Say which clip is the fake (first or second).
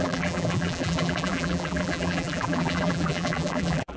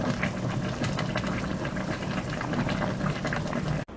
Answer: first